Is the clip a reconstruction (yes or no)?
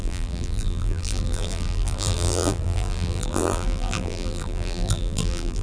yes